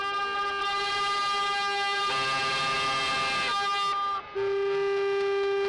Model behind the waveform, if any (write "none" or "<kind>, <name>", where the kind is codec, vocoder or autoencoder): none